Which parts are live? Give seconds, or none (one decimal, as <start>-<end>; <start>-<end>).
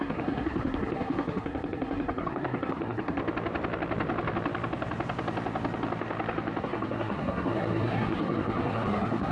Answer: 3.2-6.6